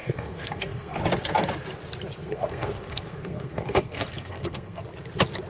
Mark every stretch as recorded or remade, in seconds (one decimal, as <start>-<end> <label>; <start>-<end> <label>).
0.0-1.0 remade; 1.0-2.2 recorded; 2.2-4.8 remade; 4.8-5.5 recorded

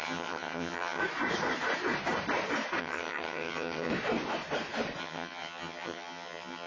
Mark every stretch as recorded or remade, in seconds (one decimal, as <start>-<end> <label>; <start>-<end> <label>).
0.0-1.0 remade; 1.0-2.8 recorded; 2.8-3.9 remade; 3.9-5.0 recorded; 5.0-6.7 remade

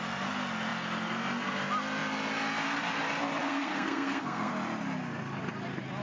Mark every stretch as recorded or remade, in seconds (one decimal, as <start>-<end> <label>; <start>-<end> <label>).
0.0-3.4 recorded; 3.4-4.5 remade; 4.5-6.0 recorded

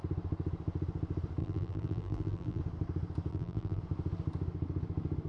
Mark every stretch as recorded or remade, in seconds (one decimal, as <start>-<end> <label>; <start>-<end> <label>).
0.0-1.4 recorded; 1.4-2.6 remade; 2.6-3.3 recorded; 3.3-3.8 remade; 3.8-5.3 recorded

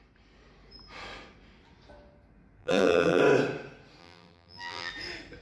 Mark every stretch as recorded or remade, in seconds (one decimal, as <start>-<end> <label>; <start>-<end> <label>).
0.0-2.6 recorded; 2.6-3.2 remade; 3.2-4.0 recorded; 4.0-4.9 remade; 4.9-5.4 recorded